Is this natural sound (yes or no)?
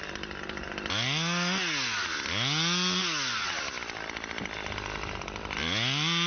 yes